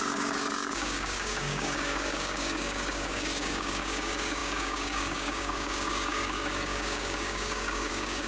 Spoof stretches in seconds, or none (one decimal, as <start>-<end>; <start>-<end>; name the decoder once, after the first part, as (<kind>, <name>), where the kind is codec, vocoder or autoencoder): 0.0-8.3 (codec, DAC)